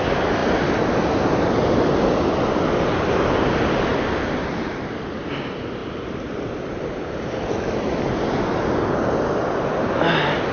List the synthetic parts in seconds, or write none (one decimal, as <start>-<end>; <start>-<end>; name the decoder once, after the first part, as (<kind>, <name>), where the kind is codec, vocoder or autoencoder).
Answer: none